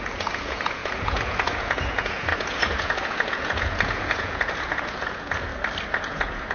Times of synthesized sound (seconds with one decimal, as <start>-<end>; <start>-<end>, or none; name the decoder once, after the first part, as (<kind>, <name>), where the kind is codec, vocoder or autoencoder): 0.0-5.5 (vocoder, Vocos); 6.0-6.5